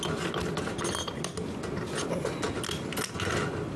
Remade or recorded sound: recorded